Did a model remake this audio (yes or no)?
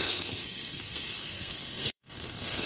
yes